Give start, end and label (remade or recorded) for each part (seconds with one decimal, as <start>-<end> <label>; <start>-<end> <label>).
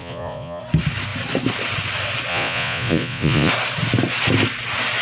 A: 0.0-0.6 remade; 0.6-2.3 recorded; 2.3-3.5 remade; 3.5-5.0 recorded